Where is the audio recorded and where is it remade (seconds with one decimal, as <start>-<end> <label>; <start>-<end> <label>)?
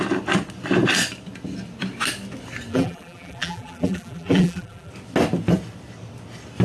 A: 0.0-2.7 recorded; 2.7-4.9 remade; 4.9-6.6 recorded